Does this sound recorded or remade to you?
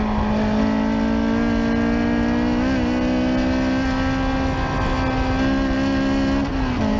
recorded